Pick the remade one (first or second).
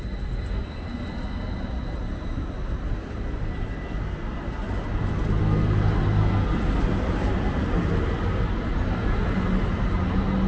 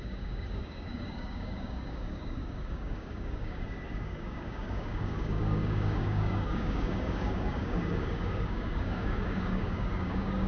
second